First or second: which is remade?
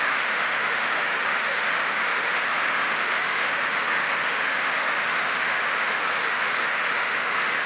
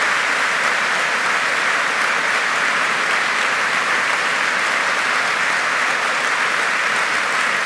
first